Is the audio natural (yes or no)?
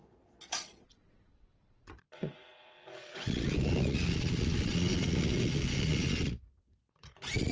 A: no